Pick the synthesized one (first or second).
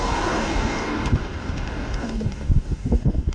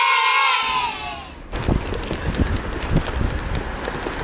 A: first